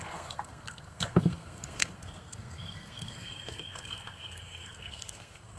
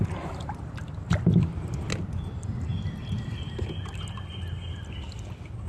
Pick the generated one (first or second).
first